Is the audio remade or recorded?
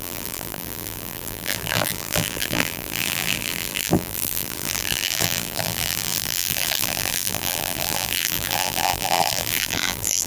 remade